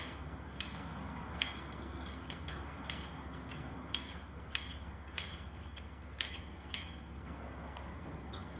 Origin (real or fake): fake